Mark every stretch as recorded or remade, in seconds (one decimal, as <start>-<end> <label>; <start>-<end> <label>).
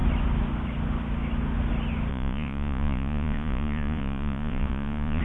0.0-2.1 recorded; 2.1-5.2 remade